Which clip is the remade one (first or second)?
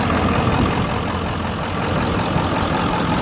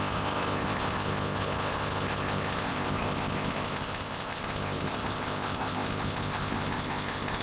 second